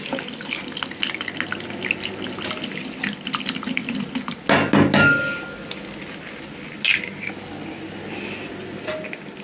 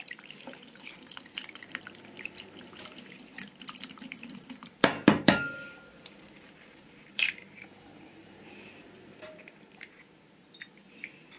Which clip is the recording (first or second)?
first